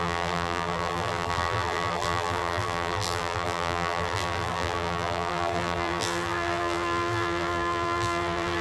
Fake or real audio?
fake